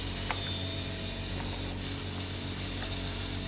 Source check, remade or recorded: recorded